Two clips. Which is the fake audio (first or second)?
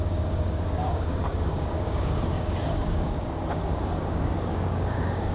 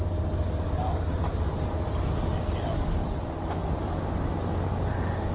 first